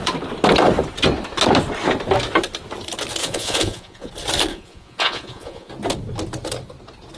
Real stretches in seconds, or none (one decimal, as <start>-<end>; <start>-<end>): 0.0-3.2; 4.1-4.5; 5.7-7.2

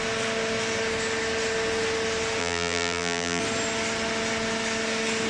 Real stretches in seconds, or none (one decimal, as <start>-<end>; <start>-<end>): 0.0-2.4; 3.4-5.3

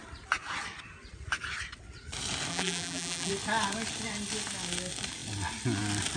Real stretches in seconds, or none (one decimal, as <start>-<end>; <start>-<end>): 0.0-2.5; 3.3-6.2

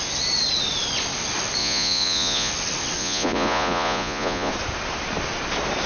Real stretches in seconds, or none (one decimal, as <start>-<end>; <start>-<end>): 0.0-1.6; 2.5-3.0; 4.5-5.9

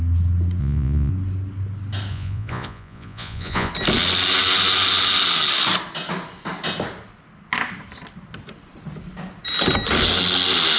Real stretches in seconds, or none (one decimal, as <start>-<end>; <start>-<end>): 0.0-0.6; 1.1-2.1; 3.7-10.8

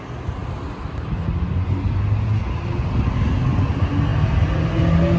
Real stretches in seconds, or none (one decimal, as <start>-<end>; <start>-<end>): 0.0-5.2

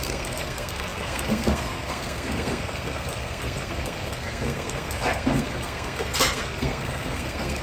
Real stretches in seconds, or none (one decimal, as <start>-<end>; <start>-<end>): none

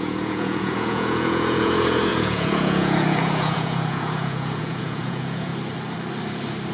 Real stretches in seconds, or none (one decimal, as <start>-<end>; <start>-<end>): 5.5-6.7